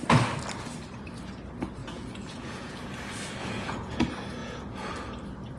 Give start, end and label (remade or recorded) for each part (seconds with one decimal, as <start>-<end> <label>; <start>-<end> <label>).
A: 0.0-1.8 recorded; 1.8-2.8 remade; 2.8-3.4 recorded; 3.4-4.0 remade; 4.0-4.4 recorded; 4.4-4.9 remade; 4.9-5.6 recorded